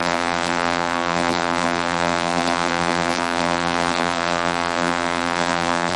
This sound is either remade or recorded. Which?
remade